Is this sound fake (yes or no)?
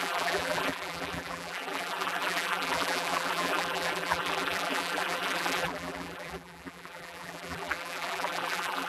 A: yes